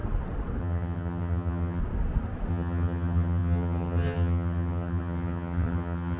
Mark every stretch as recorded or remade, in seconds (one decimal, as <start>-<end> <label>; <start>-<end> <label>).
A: 0.0-0.6 recorded; 0.6-1.8 remade; 1.8-2.5 recorded; 2.5-6.2 remade